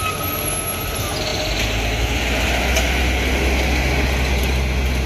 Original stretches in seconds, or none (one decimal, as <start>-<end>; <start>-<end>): 0.0-5.1